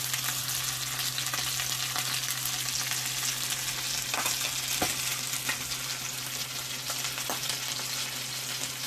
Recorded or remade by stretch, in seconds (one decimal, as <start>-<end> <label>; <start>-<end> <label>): 0.0-8.9 recorded